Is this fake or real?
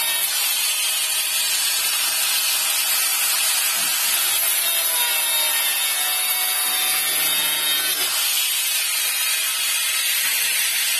real